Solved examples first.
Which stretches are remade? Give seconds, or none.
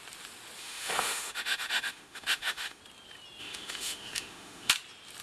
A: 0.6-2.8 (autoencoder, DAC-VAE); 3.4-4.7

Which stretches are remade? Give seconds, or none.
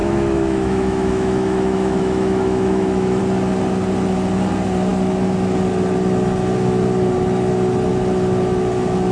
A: 0.0-3.2 (autoencoder, DAC-VAE)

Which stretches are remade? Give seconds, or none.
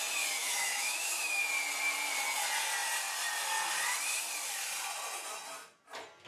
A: 0.4-1.4 (autoencoder, DAC-VAE)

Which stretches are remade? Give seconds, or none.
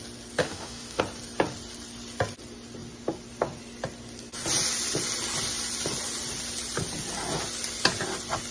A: 0.4-1.0 (autoencoder, DAC-VAE)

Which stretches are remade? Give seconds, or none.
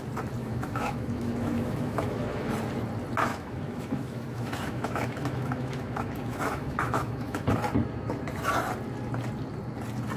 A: 0.4-2.5 (autoencoder, DAC-VAE); 3.3-7.6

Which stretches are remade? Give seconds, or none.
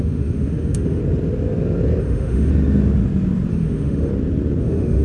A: 0.0-1.0 (autoencoder, DAC-VAE); 2.0-2.5; 3.5-4.1; 4.6-5.0